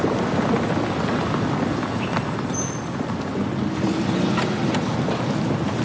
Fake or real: real